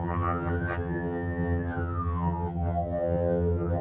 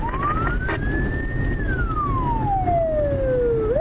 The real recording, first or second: second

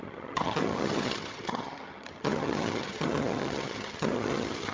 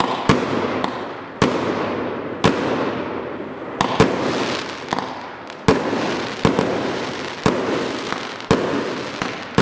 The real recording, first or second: second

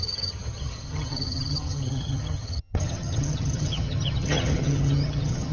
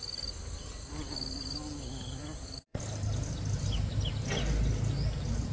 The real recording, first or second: second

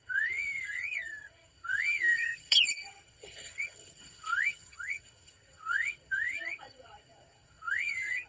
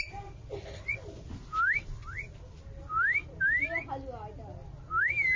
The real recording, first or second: second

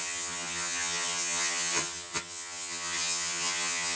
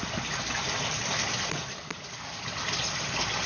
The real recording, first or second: second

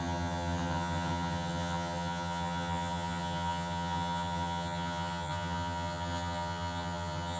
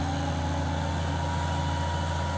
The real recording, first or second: second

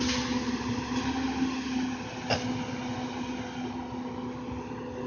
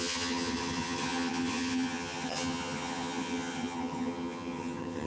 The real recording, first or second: first